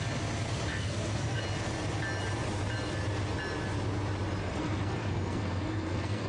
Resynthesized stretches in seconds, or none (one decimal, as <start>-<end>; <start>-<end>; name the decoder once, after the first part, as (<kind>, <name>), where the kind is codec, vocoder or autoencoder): 0.7-1.4 (codec, SNAC); 4.4-6.3